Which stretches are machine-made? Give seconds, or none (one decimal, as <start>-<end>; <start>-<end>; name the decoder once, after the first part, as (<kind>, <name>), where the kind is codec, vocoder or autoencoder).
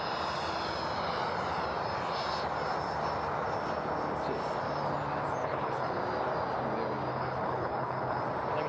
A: 5.4-6.0 (codec, HILCodec); 7.1-8.2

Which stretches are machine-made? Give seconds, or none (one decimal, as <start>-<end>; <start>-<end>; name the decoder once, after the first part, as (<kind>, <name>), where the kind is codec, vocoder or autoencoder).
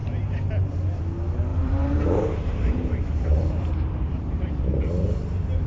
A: 1.5-4.9 (vocoder, BigVGAN v2)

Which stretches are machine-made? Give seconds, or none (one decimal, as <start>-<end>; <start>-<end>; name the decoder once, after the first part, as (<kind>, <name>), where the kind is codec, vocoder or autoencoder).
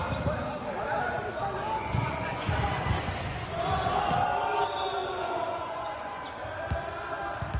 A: 1.8-3.9 (vocoder, Vocos); 5.0-6.2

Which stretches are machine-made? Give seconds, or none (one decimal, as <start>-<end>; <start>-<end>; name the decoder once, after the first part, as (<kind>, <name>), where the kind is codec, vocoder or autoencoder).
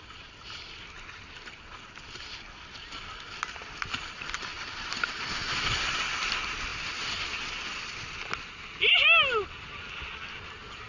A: none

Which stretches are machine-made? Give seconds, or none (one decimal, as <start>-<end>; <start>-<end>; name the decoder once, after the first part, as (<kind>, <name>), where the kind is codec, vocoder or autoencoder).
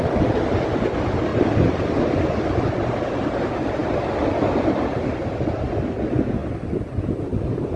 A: none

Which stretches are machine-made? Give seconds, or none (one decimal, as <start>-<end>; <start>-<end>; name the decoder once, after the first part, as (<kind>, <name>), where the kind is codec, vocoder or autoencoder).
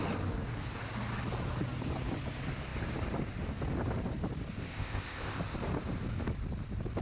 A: 4.6-5.4 (codec, ZipCodec)